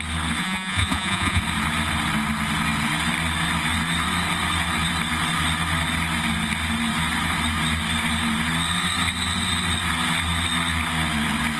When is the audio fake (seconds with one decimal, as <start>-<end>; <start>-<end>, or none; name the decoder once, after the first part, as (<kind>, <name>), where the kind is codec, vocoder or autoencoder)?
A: 0.4-1.4 (vocoder, Vocos)